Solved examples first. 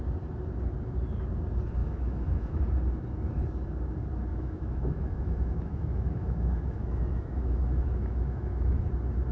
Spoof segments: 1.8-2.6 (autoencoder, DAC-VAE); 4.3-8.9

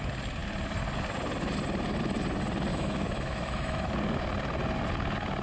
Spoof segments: 2.7-3.9 (autoencoder, DAC-VAE)